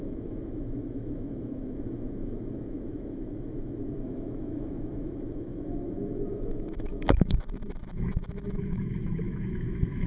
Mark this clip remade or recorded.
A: remade